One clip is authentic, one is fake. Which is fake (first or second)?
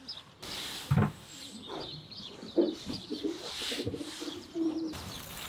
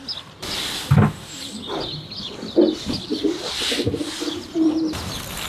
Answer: first